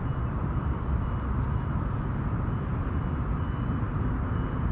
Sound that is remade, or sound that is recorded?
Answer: recorded